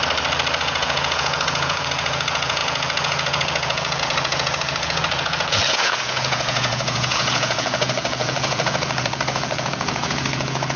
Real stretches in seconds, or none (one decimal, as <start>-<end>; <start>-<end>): 0.0-0.6